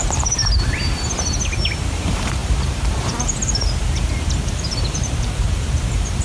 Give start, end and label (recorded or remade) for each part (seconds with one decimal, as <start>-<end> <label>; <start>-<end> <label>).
0.0-0.4 remade; 0.4-1.7 recorded; 1.7-6.2 remade